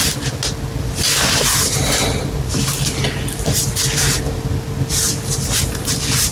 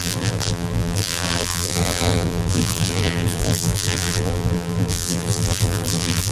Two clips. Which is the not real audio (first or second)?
second